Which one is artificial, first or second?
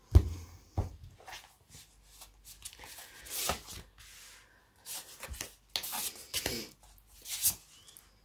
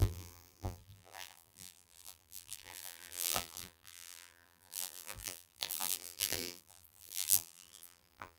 second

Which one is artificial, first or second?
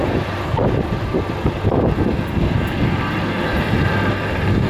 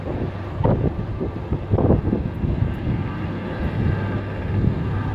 first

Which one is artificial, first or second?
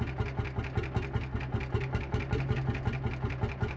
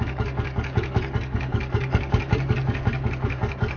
second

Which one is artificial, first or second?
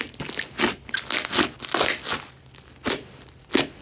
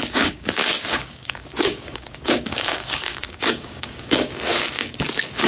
second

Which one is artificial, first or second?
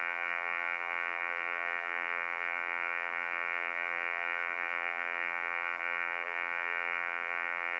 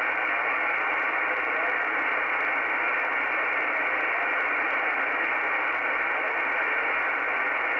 first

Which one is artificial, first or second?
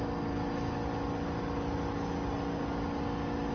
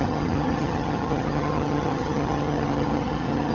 second